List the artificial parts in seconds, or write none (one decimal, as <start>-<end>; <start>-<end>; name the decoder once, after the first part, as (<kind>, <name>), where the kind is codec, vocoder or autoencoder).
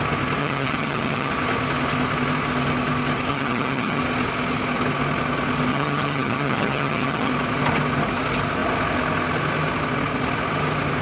0.4-1.3 (vocoder, HiFi-GAN); 3.3-4.0; 5.7-7.3